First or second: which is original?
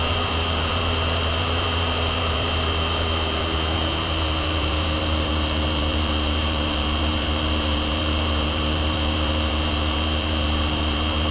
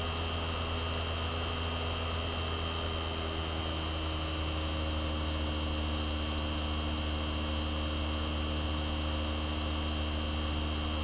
second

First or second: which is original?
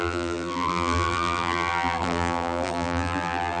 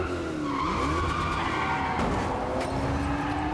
second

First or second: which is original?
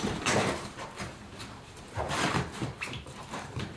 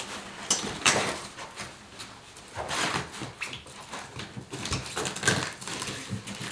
second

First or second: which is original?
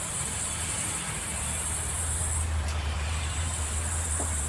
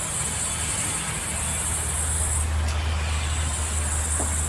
second